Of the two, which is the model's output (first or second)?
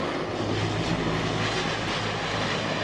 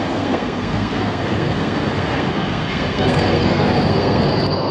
second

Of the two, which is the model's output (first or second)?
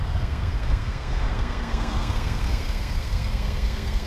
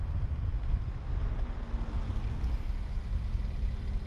first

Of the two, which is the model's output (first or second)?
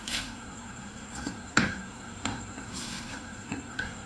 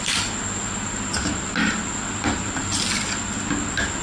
first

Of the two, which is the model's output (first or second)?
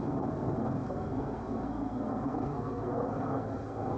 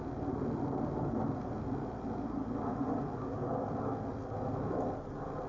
first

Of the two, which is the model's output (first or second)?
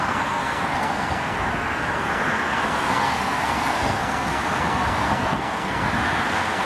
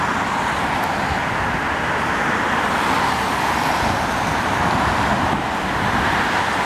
first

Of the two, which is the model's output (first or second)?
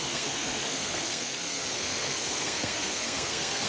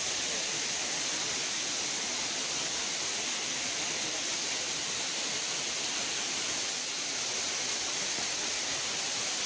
first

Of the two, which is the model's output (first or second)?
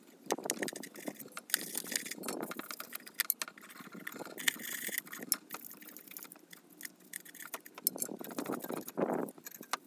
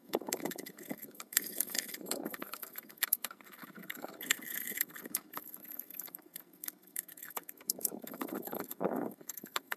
second